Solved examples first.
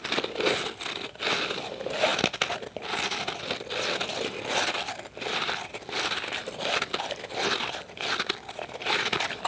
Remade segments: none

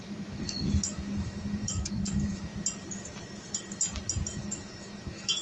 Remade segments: 0.0-2.5 (autoencoder, DAC-VAE); 4.4-5.4